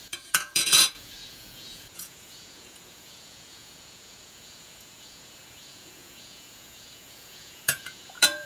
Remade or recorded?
remade